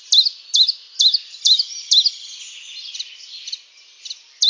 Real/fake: real